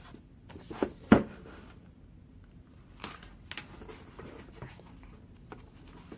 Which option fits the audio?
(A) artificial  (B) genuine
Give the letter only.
B